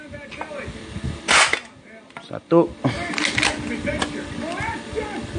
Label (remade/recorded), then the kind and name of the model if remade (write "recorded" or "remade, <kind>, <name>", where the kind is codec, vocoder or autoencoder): recorded